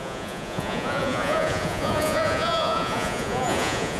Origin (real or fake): fake